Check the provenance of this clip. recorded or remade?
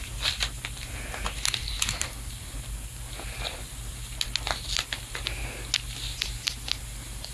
recorded